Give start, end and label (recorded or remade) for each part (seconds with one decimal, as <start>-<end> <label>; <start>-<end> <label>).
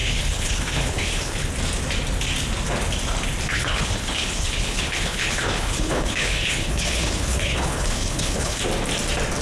0.0-1.5 remade; 1.5-3.5 recorded; 3.5-8.6 remade; 8.6-9.4 recorded